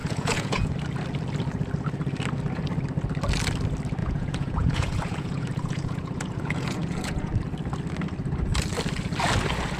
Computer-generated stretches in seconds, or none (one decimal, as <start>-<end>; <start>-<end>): 0.0-0.7; 4.0-7.3